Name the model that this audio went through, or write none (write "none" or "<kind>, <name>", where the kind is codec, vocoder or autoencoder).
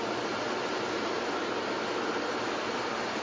none